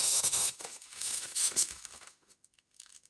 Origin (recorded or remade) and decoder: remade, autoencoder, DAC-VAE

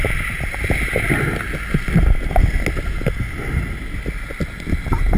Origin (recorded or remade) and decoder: recorded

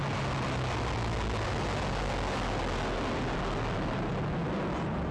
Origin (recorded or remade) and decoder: recorded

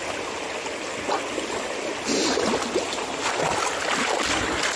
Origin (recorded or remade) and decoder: recorded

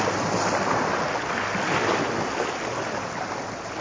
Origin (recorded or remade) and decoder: recorded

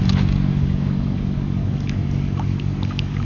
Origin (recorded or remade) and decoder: remade, codec, DAC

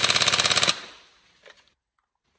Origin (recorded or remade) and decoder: recorded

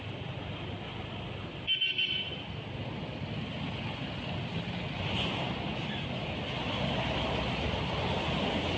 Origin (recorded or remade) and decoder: recorded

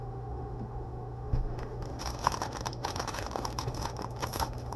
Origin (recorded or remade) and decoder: remade, autoencoder, DAC-VAE